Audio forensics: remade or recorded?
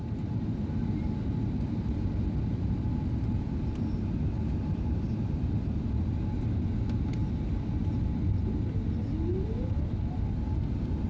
recorded